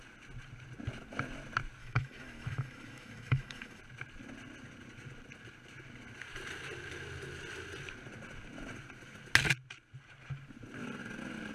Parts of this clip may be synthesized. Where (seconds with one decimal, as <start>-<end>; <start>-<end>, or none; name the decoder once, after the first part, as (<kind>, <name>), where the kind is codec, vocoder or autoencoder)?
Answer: 1.8-3.8 (autoencoder, DAC-VAE)